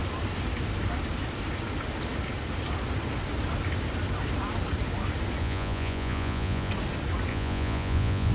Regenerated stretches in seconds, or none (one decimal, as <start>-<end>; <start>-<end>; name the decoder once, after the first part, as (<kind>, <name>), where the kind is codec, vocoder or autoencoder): 5.4-6.7 (vocoder, Vocos); 7.3-8.3